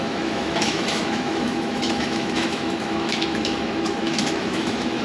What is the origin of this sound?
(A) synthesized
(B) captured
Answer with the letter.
A